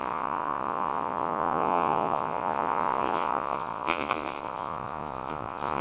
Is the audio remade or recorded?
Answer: remade